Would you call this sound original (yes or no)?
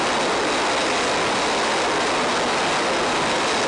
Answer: yes